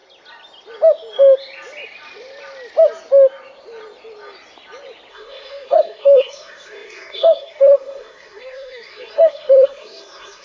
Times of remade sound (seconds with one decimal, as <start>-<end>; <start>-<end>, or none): 5.1-10.4